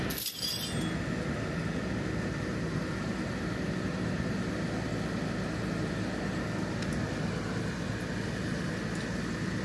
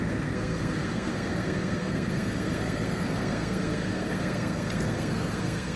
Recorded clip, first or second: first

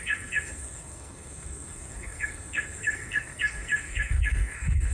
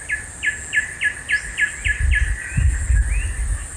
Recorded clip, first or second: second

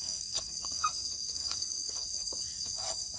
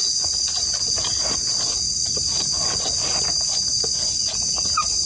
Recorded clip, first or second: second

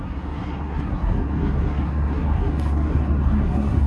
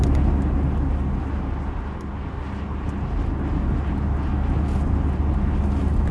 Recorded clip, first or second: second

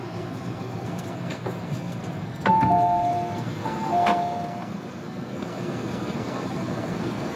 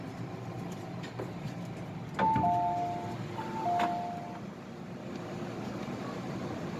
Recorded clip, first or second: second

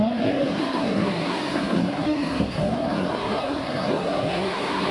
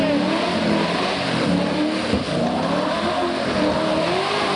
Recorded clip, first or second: second